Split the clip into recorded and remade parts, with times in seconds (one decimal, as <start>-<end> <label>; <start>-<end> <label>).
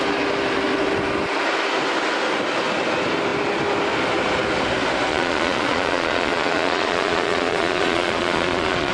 0.0-5.1 recorded; 5.1-8.9 remade